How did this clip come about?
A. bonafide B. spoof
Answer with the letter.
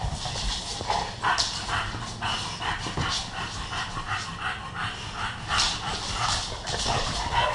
A